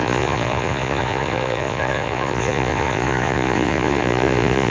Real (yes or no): no